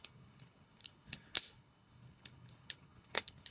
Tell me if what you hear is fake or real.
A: fake